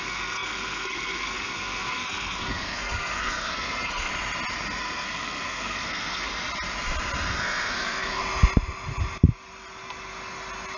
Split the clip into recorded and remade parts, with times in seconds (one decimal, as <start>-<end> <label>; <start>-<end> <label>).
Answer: 0.0-4.1 remade; 4.1-4.8 recorded; 4.8-6.3 remade; 6.3-7.4 recorded; 7.4-8.2 remade; 8.2-10.8 recorded

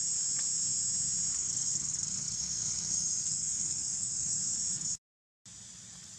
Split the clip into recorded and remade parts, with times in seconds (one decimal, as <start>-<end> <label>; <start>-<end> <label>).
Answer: 0.0-1.4 recorded; 1.4-4.6 remade; 4.6-6.2 recorded

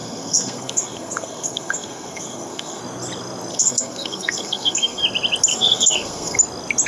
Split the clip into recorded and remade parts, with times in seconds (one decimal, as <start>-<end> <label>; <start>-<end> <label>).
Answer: 0.0-2.8 remade; 2.8-3.5 recorded; 3.5-5.0 remade; 5.0-5.5 recorded; 5.5-6.4 remade; 6.4-6.9 recorded

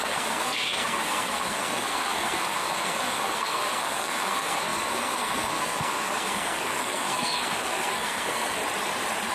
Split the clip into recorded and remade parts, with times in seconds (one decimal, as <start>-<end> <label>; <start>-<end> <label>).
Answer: 0.0-8.6 remade; 8.6-9.3 recorded

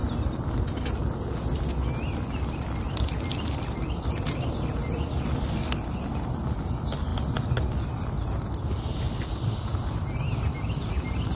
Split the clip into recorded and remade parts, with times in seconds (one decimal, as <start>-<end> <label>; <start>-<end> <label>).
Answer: 0.0-11.4 recorded

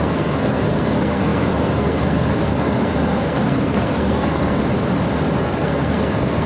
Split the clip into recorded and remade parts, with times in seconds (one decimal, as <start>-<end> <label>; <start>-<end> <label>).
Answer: 0.0-4.6 remade; 4.6-5.4 recorded; 5.4-6.5 remade